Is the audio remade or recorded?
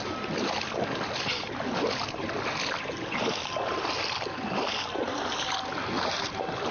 recorded